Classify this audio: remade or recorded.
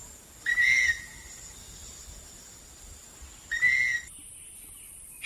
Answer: recorded